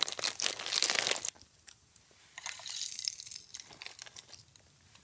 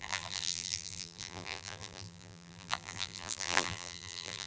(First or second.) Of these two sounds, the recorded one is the first